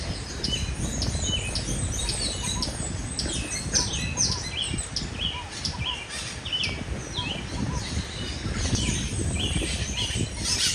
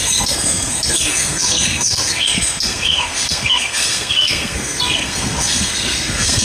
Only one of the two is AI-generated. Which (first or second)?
second